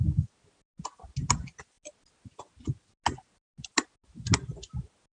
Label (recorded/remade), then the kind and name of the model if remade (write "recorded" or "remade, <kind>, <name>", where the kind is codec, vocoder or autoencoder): recorded